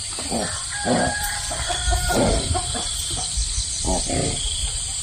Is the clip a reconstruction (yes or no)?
yes